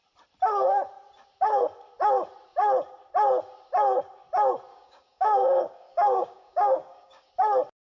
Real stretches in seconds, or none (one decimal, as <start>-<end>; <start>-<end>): 0.0-4.7; 7.3-8.0

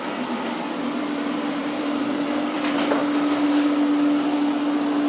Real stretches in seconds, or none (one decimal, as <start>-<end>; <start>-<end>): 3.0-5.1

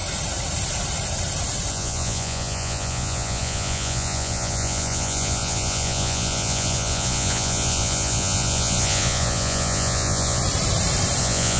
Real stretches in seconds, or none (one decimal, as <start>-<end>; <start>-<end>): 0.0-1.7; 10.4-11.2